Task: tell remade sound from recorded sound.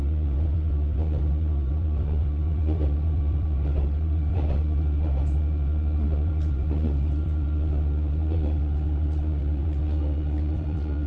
remade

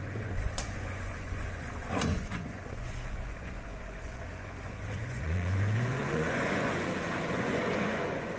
remade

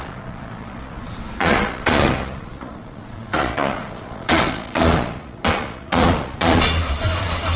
remade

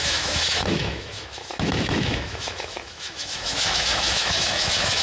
remade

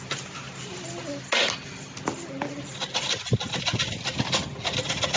recorded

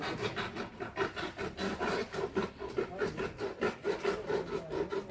recorded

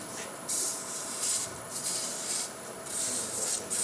remade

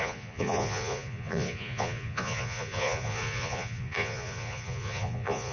remade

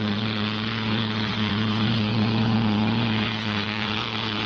remade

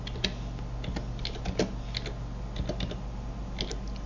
recorded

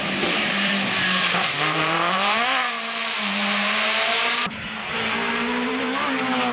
remade